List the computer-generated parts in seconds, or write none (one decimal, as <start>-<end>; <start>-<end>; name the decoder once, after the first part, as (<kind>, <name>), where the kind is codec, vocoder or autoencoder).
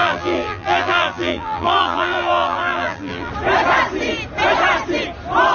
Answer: 0.0-3.3 (vocoder, BigVGAN v2)